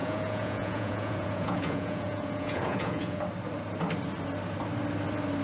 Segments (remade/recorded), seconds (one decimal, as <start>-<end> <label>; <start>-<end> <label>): 0.0-3.2 remade; 3.2-5.4 recorded

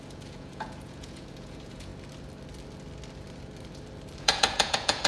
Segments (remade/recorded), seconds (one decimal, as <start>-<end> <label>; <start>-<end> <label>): 0.0-1.9 remade; 1.9-4.2 recorded; 4.2-5.1 remade

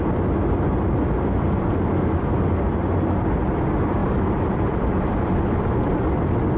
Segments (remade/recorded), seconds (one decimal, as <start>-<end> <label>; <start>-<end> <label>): 0.0-6.6 recorded

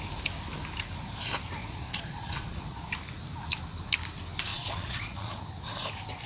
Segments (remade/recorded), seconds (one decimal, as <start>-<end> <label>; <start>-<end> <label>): 0.0-1.6 recorded; 1.6-2.9 remade; 2.9-4.5 recorded; 4.5-5.4 remade; 5.4-6.3 recorded

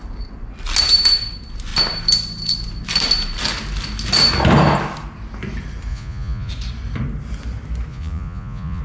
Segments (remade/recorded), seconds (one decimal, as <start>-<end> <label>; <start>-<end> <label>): 0.0-5.9 recorded; 5.9-6.5 remade; 6.5-7.9 recorded; 7.9-8.8 remade

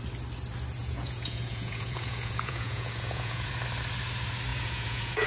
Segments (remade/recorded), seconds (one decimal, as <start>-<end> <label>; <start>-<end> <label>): 0.0-0.8 recorded; 0.8-3.5 remade; 3.5-4.5 recorded; 4.5-5.3 remade